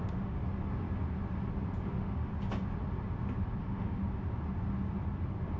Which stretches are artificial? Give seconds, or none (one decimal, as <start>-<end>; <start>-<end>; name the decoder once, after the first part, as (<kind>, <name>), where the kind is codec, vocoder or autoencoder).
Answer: 0.0-0.4 (autoencoder, DAC-VAE); 1.9-2.3; 3.6-4.0